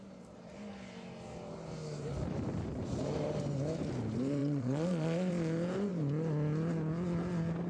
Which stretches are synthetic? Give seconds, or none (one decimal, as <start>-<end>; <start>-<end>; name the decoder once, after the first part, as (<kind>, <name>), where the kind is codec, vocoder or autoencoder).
4.4-5.3 (vocoder, Vocos)